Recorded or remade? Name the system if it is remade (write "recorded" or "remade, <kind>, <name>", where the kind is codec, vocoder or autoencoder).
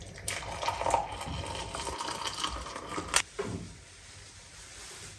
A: recorded